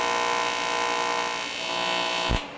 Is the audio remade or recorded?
recorded